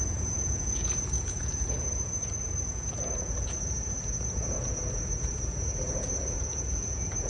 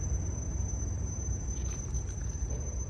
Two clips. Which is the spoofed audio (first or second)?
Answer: first